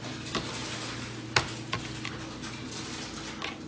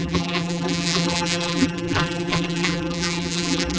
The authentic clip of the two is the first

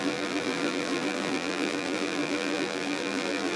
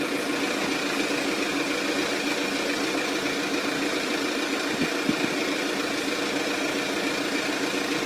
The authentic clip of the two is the second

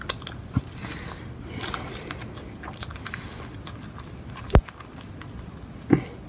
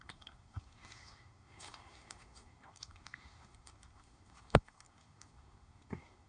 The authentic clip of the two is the first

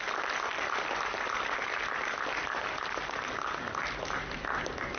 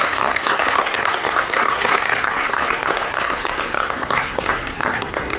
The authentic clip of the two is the first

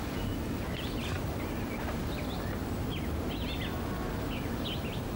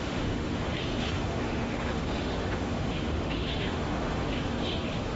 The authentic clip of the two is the first